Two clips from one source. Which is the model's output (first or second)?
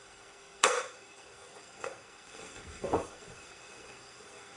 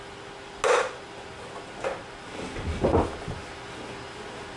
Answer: first